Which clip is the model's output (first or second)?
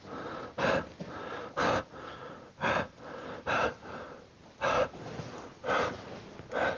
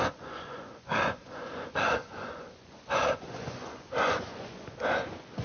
second